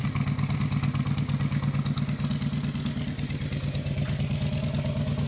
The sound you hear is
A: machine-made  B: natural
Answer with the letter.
B